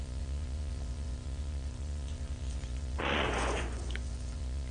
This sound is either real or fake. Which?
fake